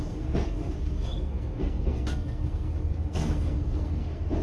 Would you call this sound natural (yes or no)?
no